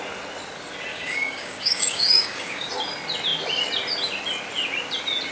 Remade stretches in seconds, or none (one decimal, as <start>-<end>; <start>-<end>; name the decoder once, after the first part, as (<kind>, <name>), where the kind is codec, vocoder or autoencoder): 0.9-2.7 (codec, DAC)